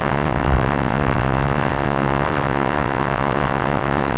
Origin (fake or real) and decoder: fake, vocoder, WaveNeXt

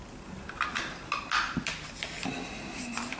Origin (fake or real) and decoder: real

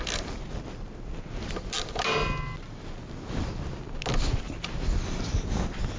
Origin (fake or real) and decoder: real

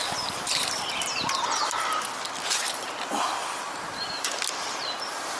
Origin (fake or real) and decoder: real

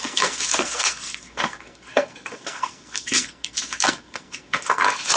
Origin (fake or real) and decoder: fake, codec, SNAC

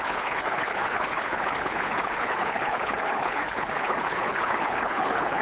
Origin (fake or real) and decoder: fake, codec, HILCodec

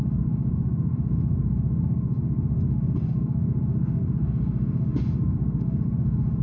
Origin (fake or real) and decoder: fake, autoencoder, DAC-VAE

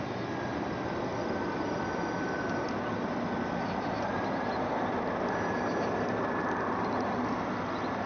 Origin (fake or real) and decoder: real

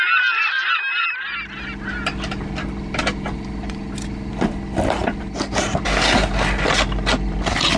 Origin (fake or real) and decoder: real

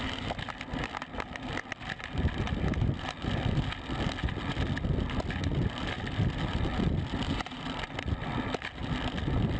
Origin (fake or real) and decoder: real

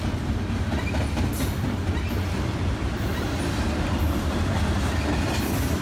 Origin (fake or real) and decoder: real